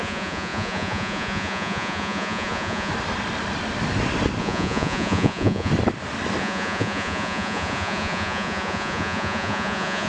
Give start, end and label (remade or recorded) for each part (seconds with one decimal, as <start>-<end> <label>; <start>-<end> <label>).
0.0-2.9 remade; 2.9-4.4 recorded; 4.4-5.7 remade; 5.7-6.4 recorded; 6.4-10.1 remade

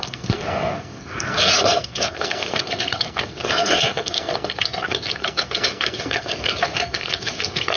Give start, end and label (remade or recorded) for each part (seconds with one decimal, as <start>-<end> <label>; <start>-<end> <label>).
0.0-7.8 remade

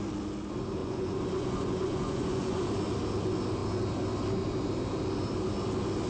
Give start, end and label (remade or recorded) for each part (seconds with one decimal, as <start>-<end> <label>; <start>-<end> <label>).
0.0-0.8 recorded; 0.8-2.6 remade; 2.6-6.1 recorded

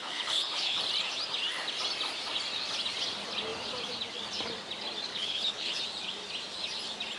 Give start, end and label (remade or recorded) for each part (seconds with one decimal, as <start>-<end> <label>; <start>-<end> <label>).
0.0-0.8 remade; 0.8-5.1 recorded; 5.1-5.8 remade; 5.8-7.2 recorded

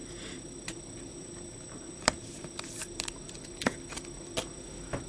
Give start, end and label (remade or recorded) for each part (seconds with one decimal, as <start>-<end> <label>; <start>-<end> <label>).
0.0-1.1 recorded; 1.1-2.6 remade; 2.6-5.1 recorded

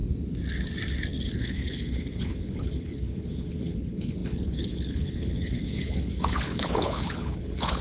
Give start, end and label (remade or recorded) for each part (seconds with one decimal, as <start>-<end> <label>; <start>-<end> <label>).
0.0-1.3 recorded; 1.3-7.8 remade

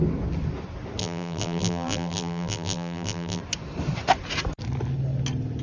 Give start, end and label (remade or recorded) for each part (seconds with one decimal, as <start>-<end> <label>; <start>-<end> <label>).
0.0-1.0 recorded; 1.0-3.4 remade; 3.4-5.6 recorded